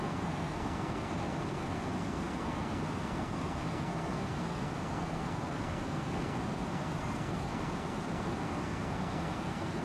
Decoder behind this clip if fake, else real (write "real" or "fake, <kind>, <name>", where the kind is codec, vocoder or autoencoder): fake, codec, SNAC